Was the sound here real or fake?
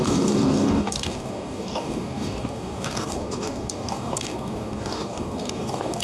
fake